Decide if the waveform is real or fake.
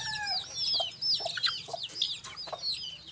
real